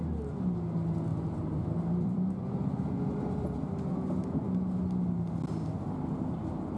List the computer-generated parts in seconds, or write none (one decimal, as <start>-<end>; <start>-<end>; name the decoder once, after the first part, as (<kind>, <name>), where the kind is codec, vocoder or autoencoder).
1.1-3.7 (vocoder, BigVGAN v2)